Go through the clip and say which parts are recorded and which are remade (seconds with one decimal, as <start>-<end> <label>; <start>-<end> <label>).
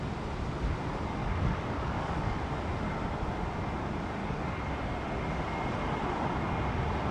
0.0-1.2 recorded; 1.2-2.4 remade; 2.4-4.2 recorded; 4.2-4.7 remade; 4.7-7.1 recorded